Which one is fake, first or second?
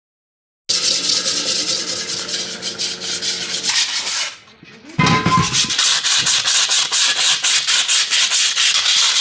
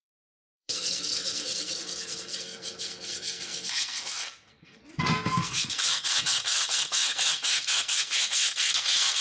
second